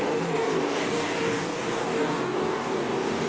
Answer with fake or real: fake